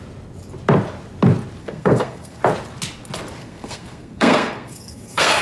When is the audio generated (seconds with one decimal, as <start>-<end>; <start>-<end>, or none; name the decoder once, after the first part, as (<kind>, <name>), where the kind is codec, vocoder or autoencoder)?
1.6-2.4 (codec, SNAC); 3.4-5.4